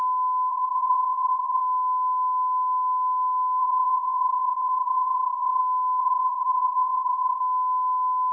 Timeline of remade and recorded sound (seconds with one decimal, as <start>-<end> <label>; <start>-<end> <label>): 0.0-0.5 recorded; 0.5-1.6 remade; 1.6-3.6 recorded; 3.6-5.6 remade; 5.6-6.0 recorded; 6.0-7.4 remade; 7.4-8.3 recorded